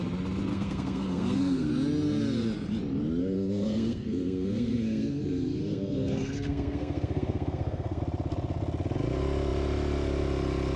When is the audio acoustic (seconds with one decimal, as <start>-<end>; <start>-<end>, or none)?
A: 0.0-0.5; 1.7-3.2; 8.0-10.8